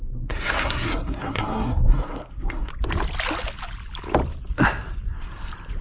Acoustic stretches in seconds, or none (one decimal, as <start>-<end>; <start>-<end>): 2.7-5.8